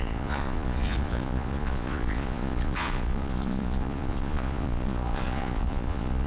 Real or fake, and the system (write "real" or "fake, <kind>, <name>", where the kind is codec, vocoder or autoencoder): fake, vocoder, Vocos